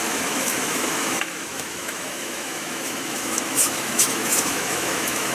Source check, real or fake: fake